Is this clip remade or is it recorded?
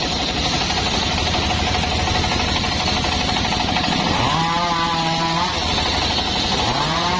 recorded